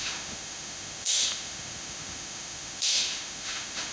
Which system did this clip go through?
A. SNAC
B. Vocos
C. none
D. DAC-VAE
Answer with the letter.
D